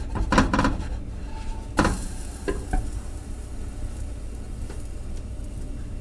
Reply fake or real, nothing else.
fake